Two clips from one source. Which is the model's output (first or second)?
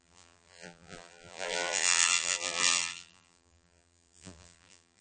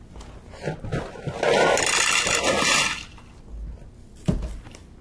first